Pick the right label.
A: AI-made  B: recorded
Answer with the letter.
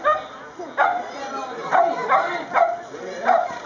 B